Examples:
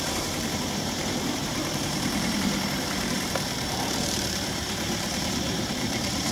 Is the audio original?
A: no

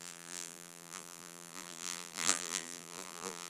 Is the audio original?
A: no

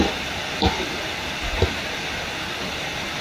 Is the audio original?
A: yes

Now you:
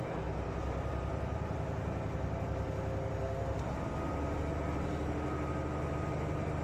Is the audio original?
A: yes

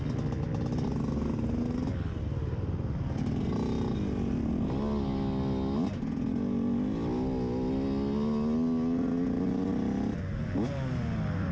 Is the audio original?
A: yes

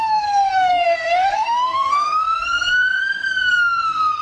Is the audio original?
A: no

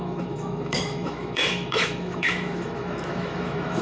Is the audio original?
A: no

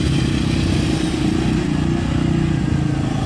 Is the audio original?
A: yes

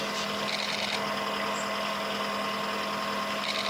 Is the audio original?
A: yes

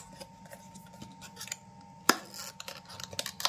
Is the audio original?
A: yes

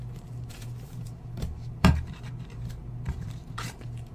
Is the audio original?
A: no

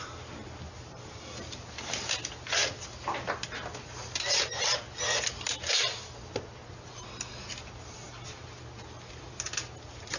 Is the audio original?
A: yes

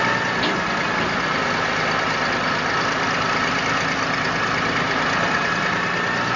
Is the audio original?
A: yes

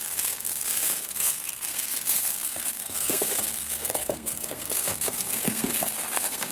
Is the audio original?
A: no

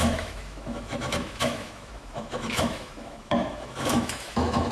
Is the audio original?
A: no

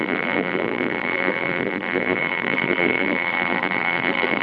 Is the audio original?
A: no